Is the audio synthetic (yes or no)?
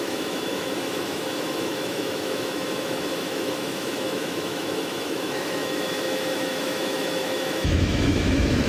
yes